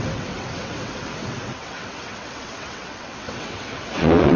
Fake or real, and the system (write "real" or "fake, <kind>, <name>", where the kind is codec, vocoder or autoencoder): fake, vocoder, WaveNeXt